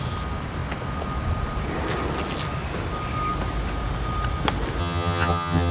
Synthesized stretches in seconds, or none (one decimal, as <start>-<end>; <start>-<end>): 4.8-5.7